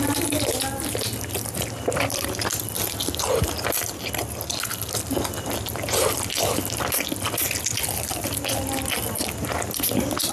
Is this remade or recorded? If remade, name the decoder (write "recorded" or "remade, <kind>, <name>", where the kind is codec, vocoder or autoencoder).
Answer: recorded